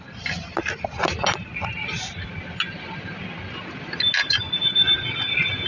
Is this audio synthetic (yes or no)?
no